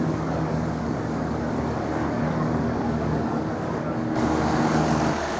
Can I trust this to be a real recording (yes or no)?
no